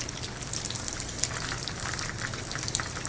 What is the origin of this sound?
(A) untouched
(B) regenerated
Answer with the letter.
A